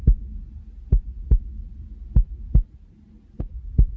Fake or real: real